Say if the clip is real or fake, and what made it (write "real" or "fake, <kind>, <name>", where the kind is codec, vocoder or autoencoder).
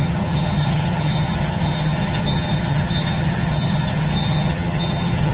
fake, vocoder, HiFi-GAN